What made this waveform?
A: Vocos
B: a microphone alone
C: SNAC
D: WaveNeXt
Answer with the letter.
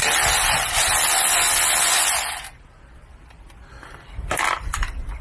B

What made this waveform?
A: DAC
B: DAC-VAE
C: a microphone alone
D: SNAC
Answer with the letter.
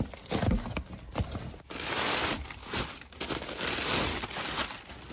C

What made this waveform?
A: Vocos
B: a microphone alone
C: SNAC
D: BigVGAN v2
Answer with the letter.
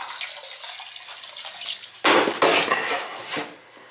B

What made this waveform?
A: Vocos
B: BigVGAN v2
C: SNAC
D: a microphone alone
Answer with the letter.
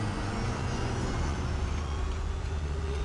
A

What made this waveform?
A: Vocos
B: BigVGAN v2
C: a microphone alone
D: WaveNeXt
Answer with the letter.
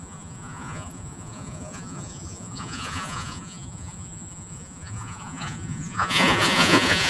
A